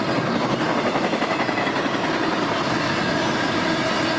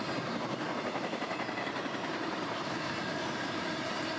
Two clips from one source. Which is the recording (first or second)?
first